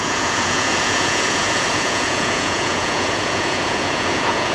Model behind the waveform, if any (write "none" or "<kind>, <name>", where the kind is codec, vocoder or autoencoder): vocoder, Vocos